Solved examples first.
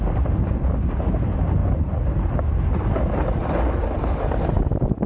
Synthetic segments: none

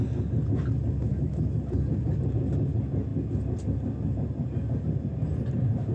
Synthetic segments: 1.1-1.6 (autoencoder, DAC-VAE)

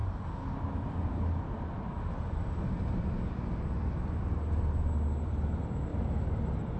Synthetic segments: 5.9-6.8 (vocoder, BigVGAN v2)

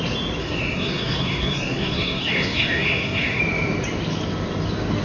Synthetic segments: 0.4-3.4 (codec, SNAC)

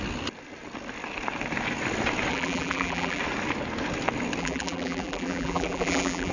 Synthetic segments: 2.3-3.2 (vocoder, BigVGAN v2); 4.4-6.3

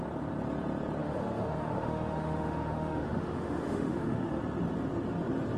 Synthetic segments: 1.0-4.4 (autoencoder, DAC-VAE)

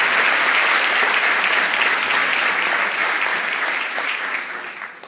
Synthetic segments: 3.3-4.2 (vocoder, BigVGAN v2)

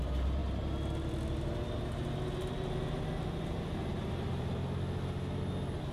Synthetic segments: 0.0-0.4 (vocoder, BigVGAN v2); 3.9-4.6